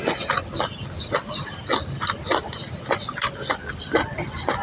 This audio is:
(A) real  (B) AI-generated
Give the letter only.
A